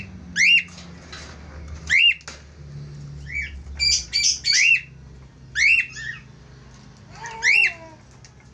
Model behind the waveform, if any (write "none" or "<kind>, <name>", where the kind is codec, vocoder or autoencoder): none